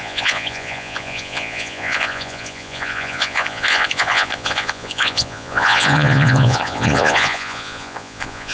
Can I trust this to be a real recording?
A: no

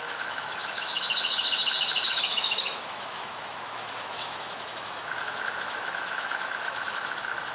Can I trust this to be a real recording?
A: no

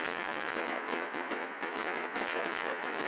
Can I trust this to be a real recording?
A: no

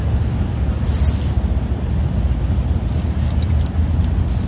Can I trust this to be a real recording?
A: yes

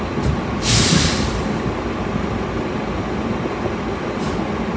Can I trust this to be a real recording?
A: yes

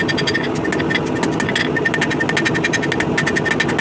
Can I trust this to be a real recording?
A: yes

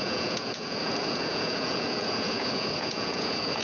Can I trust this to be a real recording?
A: no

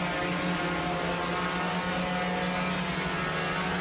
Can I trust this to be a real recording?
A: yes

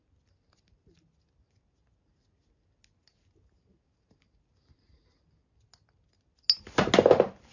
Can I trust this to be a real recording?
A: yes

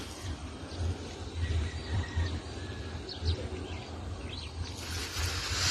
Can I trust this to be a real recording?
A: yes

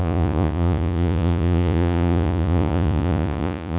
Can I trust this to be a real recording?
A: no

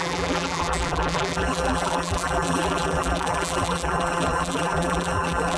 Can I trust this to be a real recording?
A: no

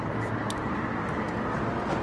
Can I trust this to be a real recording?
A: yes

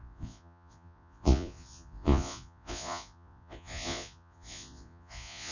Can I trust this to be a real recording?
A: no